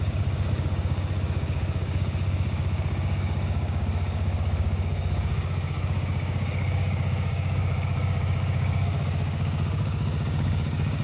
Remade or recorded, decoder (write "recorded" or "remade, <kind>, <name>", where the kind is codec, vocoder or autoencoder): remade, codec, DAC